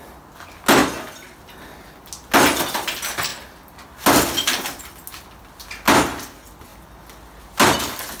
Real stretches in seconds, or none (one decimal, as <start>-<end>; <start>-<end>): 0.0-8.2